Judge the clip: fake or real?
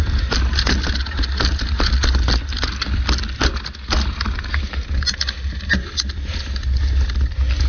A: real